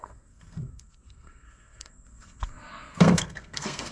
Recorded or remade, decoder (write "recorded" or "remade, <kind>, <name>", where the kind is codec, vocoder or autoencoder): remade, codec, SNAC